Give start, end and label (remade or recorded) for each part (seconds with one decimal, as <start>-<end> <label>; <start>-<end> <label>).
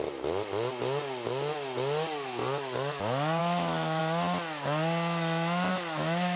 0.0-3.4 recorded; 3.4-4.0 remade; 4.0-5.7 recorded; 5.7-6.4 remade